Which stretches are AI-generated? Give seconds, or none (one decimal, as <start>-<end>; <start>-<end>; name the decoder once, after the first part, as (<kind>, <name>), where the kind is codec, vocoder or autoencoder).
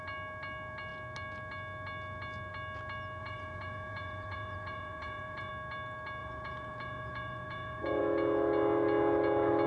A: 3.2-5.5 (vocoder, Vocos); 6.2-8.0